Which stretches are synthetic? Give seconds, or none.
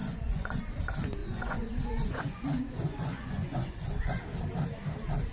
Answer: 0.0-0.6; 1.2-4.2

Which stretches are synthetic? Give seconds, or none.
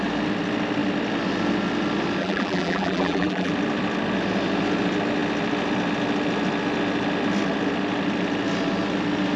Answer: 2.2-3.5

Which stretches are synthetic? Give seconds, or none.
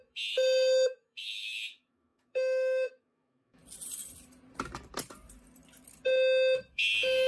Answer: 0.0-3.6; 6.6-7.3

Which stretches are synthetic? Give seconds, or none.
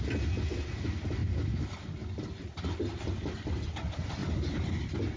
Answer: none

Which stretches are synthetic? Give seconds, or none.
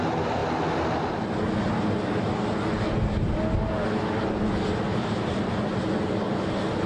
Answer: 4.9-5.5